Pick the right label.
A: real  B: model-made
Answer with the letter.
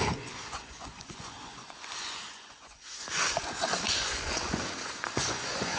B